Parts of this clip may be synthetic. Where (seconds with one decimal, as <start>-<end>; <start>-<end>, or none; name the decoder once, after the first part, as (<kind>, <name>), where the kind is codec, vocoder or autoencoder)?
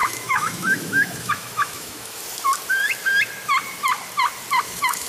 0.0-2.2 (autoencoder, DAC-VAE); 4.6-5.1